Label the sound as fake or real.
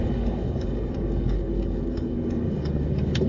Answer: fake